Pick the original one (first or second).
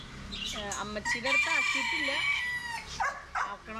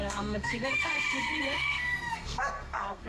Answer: first